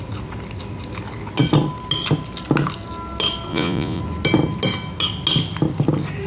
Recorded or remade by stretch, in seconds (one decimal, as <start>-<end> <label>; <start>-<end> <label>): 0.0-3.5 recorded; 3.5-4.0 remade; 4.0-6.3 recorded